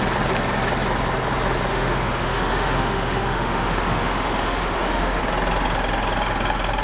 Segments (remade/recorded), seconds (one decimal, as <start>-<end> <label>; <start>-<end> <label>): 0.0-1.7 recorded; 1.7-5.2 remade; 5.2-6.8 recorded